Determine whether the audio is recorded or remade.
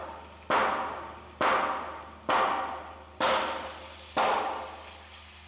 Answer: recorded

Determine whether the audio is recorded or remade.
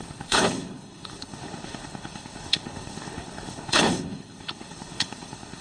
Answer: remade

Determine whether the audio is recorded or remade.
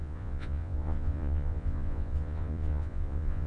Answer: remade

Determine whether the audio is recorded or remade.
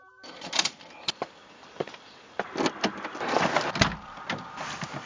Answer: recorded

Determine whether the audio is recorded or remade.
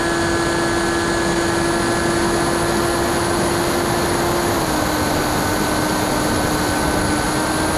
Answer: recorded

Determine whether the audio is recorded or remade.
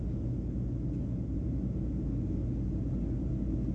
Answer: recorded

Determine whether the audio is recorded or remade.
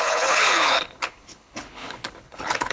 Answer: remade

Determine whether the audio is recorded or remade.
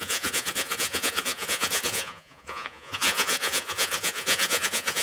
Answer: remade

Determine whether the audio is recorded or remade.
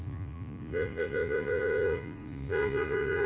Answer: remade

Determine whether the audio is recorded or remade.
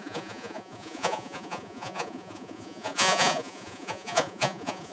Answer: remade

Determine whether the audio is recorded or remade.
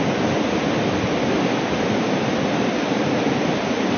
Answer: recorded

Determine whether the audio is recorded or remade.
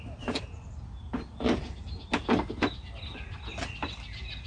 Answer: recorded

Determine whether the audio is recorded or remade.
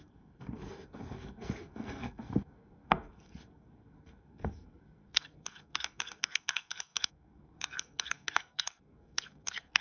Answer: remade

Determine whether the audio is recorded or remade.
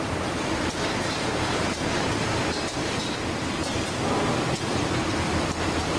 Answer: remade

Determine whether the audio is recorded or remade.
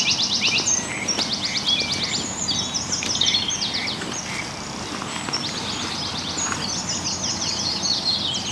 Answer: recorded